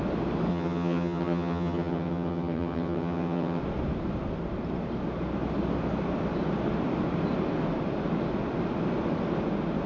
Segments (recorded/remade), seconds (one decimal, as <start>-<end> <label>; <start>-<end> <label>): 0.0-0.5 recorded; 0.5-3.6 remade; 3.6-9.9 recorded